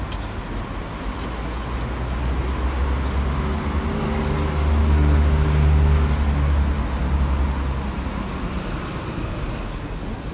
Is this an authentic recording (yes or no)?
yes